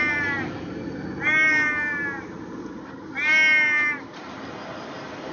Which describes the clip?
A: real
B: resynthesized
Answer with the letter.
A